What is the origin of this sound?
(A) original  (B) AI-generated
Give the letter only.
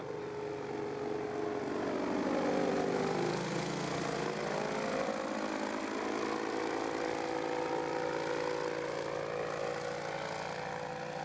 A